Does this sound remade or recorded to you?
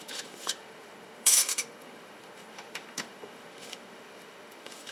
remade